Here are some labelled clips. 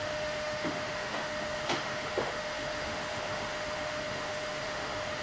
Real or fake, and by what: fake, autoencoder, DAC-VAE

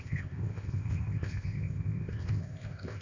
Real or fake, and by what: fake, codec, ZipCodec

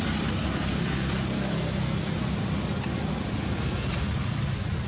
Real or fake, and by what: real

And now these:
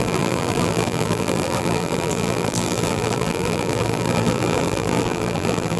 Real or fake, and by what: fake, vocoder, BigVGAN v2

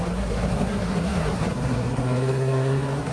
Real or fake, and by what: fake, codec, SNAC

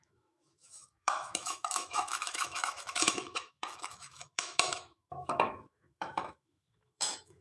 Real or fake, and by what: fake, autoencoder, DAC-VAE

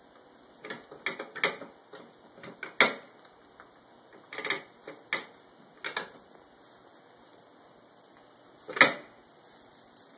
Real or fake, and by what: real